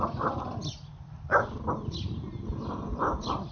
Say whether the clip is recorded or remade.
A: recorded